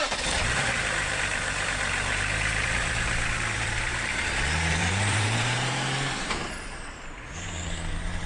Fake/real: fake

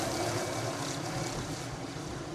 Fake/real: real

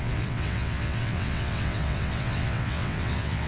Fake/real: fake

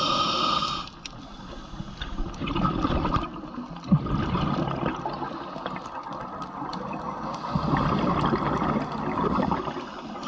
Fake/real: real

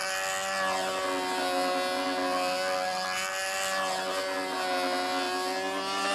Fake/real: real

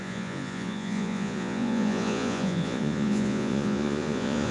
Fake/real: fake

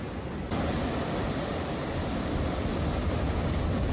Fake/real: real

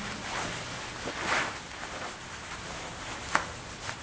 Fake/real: real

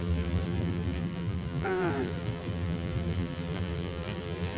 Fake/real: fake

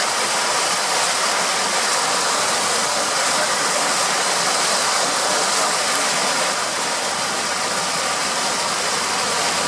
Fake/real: real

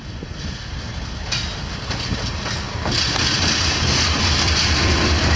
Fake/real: real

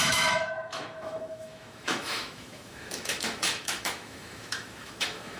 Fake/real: fake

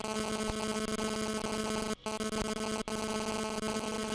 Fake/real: real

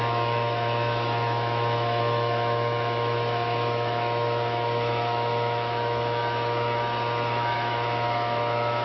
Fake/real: fake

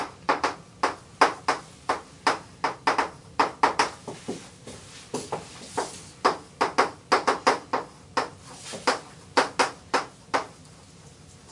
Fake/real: real